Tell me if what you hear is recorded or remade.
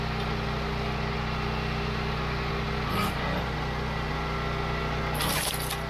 recorded